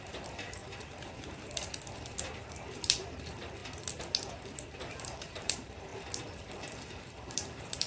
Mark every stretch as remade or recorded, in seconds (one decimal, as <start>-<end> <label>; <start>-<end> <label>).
0.0-0.6 remade; 0.6-2.0 recorded; 2.0-3.6 remade; 3.6-4.8 recorded; 4.8-5.9 remade; 5.9-6.5 recorded; 6.5-7.9 remade